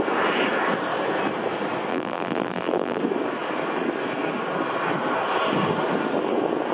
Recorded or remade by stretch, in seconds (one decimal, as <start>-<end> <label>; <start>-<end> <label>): 0.0-1.9 recorded; 1.9-3.0 remade; 3.0-6.7 recorded